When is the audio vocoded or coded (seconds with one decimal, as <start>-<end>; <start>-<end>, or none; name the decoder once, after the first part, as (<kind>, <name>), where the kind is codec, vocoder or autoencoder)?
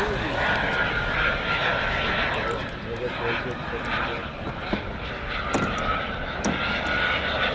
none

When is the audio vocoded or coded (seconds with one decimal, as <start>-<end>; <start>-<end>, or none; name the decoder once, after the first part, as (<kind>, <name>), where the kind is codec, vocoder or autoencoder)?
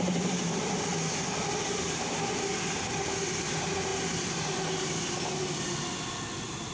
0.0-0.9 (vocoder, BigVGAN v2); 1.5-2.5; 3.2-3.9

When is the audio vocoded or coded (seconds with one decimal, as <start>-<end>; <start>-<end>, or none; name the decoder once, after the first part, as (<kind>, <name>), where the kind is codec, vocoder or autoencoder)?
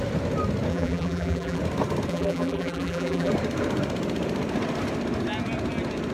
0.7-1.6 (vocoder, BigVGAN v2); 2.1-3.3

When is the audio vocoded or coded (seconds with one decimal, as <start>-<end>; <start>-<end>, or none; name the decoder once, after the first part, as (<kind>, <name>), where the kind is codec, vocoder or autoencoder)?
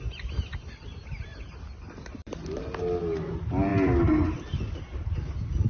1.3-2.4 (vocoder, BigVGAN v2); 3.7-5.3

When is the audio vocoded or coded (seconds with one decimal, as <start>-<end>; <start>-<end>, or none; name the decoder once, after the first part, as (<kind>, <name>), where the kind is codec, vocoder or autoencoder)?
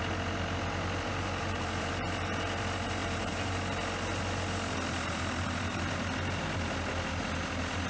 1.1-1.9 (vocoder, BigVGAN v2); 3.0-3.5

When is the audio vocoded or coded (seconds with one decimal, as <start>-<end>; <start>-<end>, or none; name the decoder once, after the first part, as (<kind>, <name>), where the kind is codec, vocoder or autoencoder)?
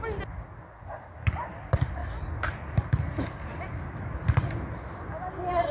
none